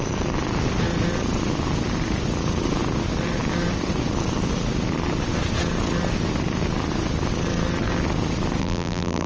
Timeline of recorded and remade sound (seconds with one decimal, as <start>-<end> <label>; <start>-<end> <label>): 0.0-8.6 recorded; 8.6-9.3 remade